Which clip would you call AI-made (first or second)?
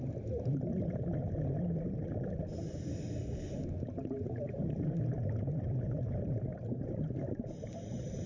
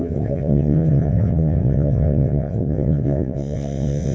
second